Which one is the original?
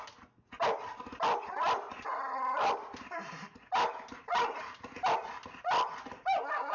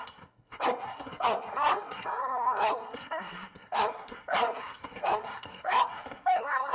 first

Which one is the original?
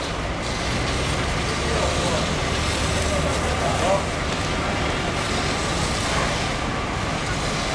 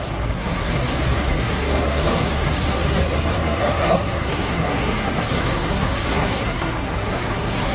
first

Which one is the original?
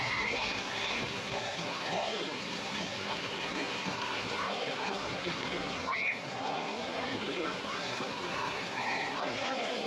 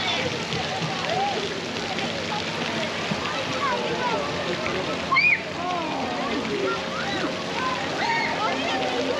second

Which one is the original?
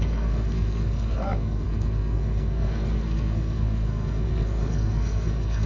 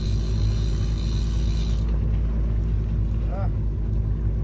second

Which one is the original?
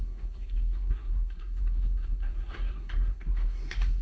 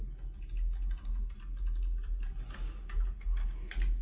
second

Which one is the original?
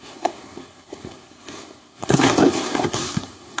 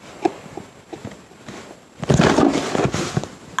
second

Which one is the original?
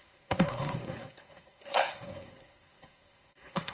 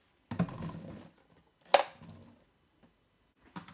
second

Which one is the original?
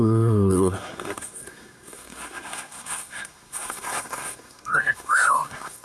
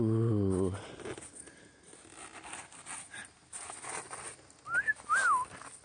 second